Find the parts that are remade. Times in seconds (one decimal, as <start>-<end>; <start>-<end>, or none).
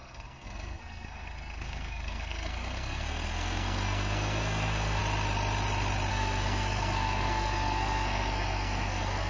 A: 0.0-5.0; 6.1-9.3